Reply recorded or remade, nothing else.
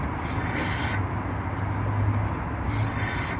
recorded